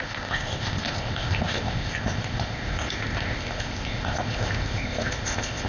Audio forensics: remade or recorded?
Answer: remade